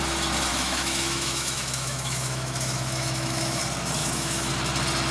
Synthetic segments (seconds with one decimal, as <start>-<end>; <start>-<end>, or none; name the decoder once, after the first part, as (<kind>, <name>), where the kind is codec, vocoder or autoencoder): 0.5-3.6 (autoencoder, DAC-VAE); 4.0-4.5